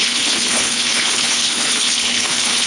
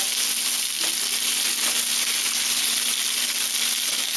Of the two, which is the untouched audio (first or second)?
second